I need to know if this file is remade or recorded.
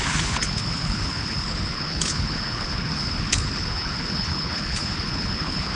remade